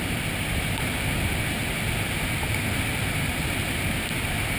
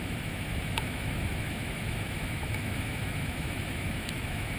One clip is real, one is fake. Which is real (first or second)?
first